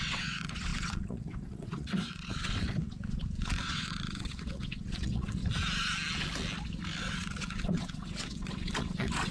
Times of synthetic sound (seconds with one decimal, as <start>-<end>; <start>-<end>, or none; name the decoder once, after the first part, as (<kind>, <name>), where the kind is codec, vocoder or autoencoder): 0.0-5.4 (vocoder, WaveNeXt); 7.0-9.3